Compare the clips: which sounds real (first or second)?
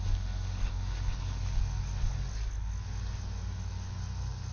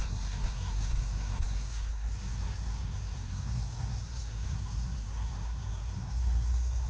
first